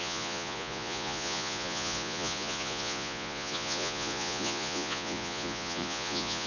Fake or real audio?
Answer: fake